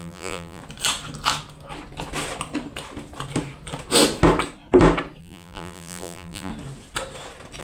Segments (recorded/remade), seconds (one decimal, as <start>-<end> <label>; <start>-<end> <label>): 0.0-0.6 remade; 0.6-5.2 recorded; 5.2-6.5 remade; 6.5-7.6 recorded